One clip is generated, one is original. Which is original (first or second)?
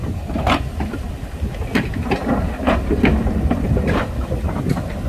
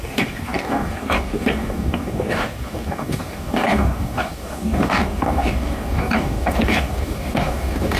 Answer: first